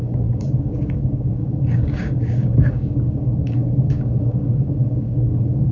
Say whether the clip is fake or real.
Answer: fake